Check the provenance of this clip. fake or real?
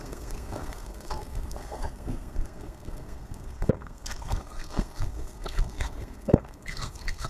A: fake